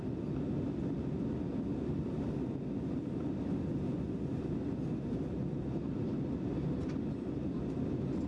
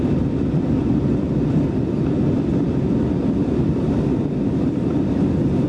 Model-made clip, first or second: second